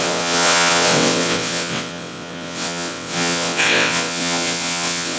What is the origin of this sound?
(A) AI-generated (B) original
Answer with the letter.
A